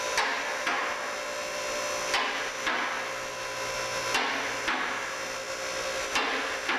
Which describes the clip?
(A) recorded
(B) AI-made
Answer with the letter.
A